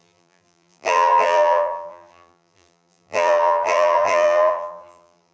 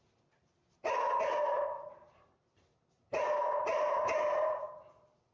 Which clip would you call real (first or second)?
second